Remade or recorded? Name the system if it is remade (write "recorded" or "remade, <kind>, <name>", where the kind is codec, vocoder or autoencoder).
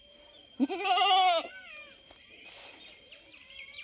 recorded